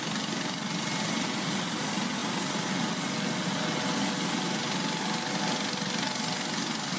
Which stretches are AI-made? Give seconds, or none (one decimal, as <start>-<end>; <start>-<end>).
none